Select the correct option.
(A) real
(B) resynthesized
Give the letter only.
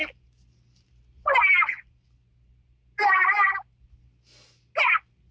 A